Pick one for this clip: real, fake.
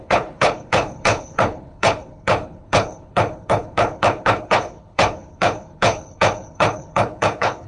fake